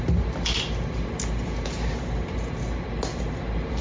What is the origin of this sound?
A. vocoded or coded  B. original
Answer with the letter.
B